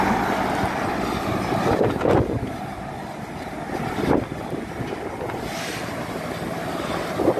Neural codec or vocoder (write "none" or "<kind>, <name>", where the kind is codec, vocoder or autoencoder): none